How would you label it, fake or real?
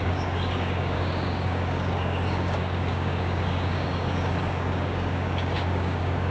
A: fake